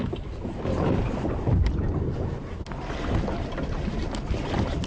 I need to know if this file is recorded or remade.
recorded